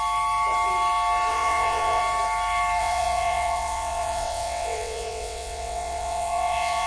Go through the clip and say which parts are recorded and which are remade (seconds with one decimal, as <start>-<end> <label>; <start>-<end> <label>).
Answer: 0.0-1.3 recorded; 1.3-2.0 remade; 2.0-2.8 recorded; 2.8-6.9 remade